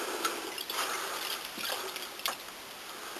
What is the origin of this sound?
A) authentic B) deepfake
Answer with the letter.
A